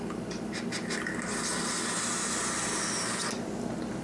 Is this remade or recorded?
recorded